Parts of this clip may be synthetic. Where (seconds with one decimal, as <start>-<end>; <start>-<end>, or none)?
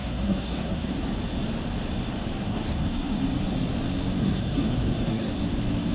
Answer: 0.0-0.9; 2.5-3.2; 4.2-5.3